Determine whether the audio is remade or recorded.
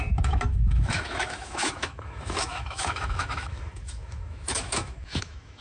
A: remade